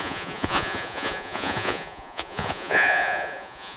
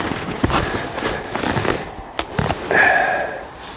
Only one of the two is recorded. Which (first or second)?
second